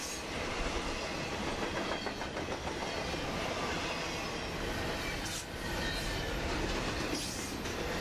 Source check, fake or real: real